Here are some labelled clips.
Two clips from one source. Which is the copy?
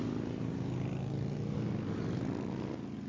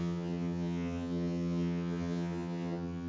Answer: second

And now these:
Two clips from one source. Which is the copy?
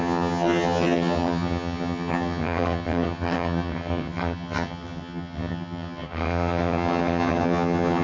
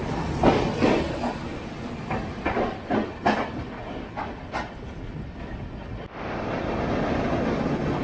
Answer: first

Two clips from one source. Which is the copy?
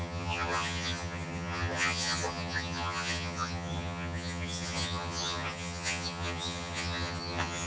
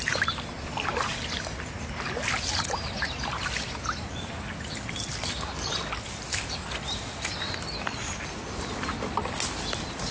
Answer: first